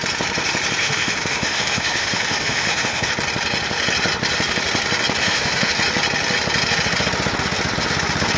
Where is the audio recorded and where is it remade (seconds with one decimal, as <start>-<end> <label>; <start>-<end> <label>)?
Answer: 0.0-0.8 recorded; 0.8-3.1 remade; 3.1-5.2 recorded; 5.2-5.7 remade; 5.7-8.4 recorded